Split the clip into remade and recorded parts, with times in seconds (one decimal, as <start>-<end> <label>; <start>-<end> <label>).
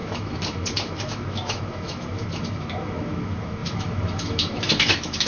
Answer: 0.0-5.3 remade